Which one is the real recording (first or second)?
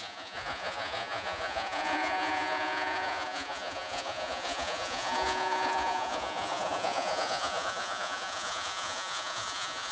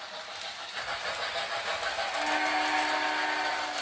second